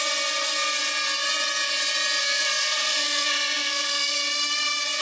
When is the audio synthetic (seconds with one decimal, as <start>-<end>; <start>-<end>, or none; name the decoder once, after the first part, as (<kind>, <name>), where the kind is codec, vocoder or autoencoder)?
2.2-4.2 (codec, SNAC)